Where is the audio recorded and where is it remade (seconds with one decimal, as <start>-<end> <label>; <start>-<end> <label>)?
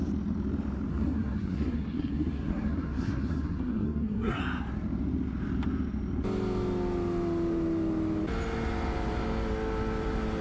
0.0-0.9 recorded; 0.9-4.4 remade; 4.4-10.4 recorded